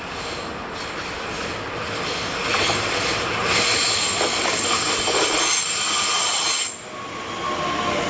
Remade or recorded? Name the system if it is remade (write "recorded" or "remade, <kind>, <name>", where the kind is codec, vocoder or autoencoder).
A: recorded